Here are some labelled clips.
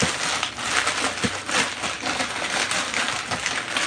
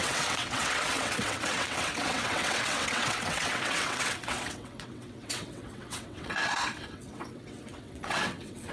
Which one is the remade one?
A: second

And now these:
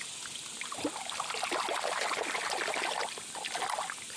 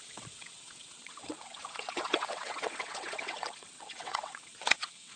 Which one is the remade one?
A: second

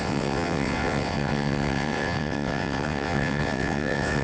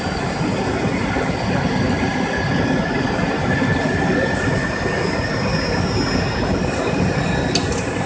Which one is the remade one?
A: first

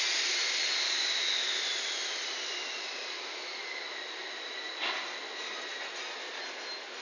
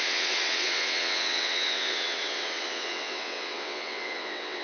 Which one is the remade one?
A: second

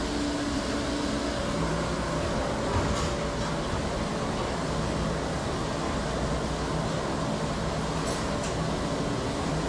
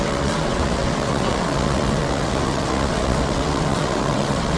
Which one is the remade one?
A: second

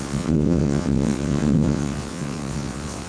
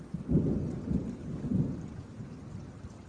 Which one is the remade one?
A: first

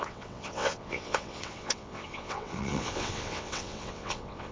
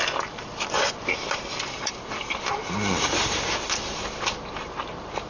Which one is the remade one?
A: first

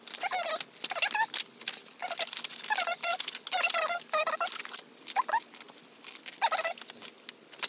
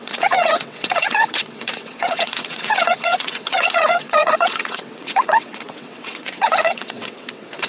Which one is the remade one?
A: second